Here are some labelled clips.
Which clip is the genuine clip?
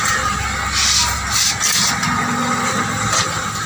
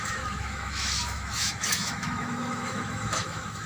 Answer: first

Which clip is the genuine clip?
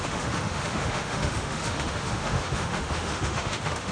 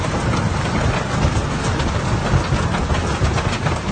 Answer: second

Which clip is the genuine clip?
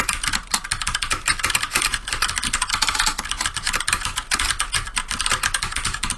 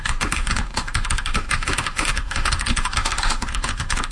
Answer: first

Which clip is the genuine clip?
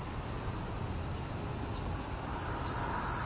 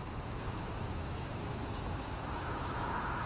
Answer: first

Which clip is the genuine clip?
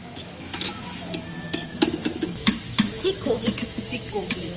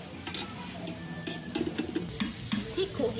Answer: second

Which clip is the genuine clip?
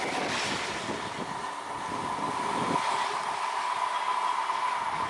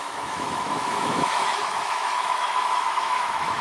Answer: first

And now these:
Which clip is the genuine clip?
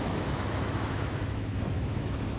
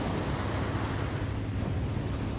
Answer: second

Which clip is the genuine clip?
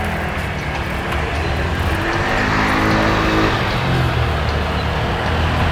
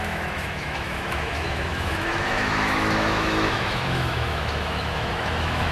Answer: first